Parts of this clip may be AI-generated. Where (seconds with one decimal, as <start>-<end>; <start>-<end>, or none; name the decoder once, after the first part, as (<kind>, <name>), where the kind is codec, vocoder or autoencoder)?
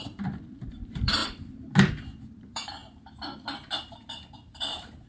0.0-1.2 (vocoder, BigVGAN v2); 2.3-2.8; 4.0-5.1